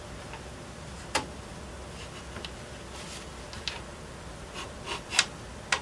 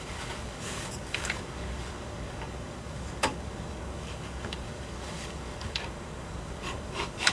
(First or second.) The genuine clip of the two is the first